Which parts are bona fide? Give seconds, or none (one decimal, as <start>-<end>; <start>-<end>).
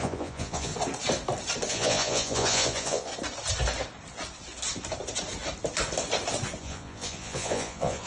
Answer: 0.7-1.7; 3.1-6.6